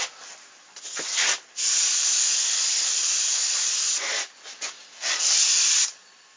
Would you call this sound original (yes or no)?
yes